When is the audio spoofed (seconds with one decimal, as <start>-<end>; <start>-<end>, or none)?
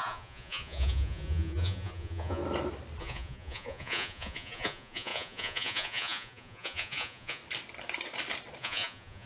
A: 0.0-2.4; 3.0-7.4; 8.6-9.3